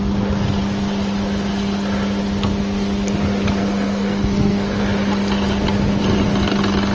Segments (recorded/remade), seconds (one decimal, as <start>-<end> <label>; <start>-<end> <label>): 0.0-3.6 recorded; 3.6-4.8 remade; 4.8-6.9 recorded